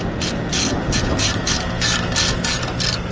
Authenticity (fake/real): real